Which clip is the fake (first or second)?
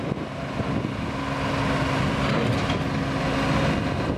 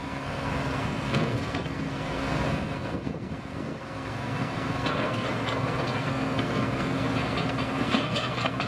second